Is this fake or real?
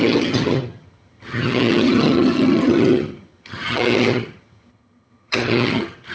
fake